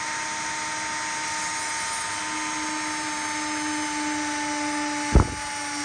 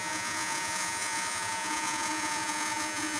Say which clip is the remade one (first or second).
second